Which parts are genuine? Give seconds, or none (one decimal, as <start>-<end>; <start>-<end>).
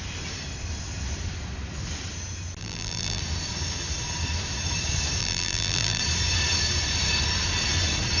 0.0-2.6; 3.2-5.2; 6.0-8.2